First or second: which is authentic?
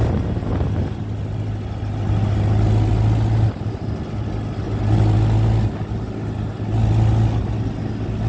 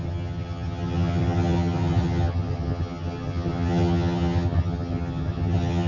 first